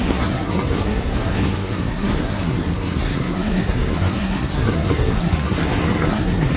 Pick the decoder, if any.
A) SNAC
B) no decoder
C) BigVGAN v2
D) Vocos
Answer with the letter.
A